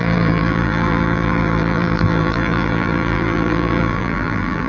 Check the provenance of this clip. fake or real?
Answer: fake